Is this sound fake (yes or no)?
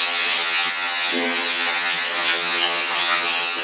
yes